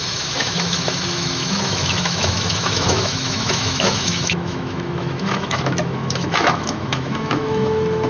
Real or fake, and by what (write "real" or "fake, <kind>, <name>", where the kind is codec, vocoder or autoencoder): fake, autoencoder, DAC-VAE